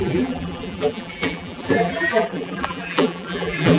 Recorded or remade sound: remade